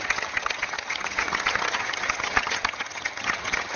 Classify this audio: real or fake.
fake